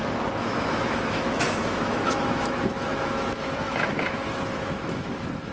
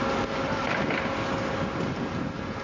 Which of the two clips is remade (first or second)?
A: first